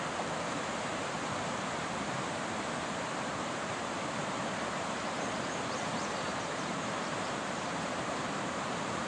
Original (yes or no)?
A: no